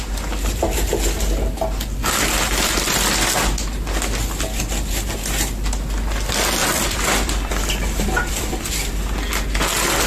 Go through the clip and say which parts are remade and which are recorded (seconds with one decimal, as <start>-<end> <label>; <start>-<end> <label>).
0.0-6.6 recorded; 6.6-8.9 remade; 8.9-10.1 recorded